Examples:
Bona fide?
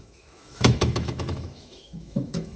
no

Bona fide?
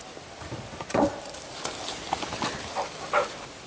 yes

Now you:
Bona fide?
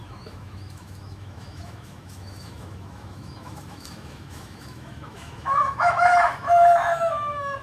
no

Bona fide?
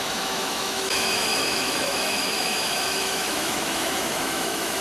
no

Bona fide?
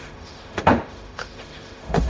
no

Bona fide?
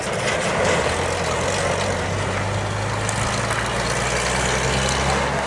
yes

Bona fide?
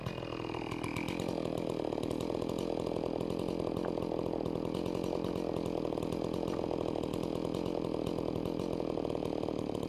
yes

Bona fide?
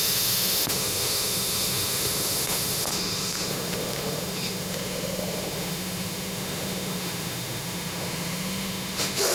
no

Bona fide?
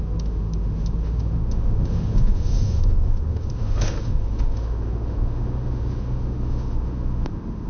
no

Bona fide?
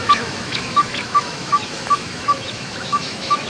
no